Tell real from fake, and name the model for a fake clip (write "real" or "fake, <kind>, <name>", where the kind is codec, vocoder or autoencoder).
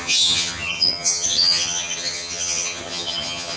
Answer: fake, vocoder, HiFi-GAN